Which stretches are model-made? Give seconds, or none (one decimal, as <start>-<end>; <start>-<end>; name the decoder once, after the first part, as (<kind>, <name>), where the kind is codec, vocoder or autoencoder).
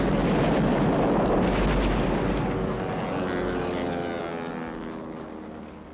none